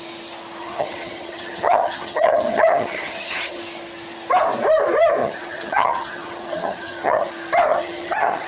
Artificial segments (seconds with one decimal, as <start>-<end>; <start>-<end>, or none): 0.6-3.6; 5.2-7.3; 7.7-8.5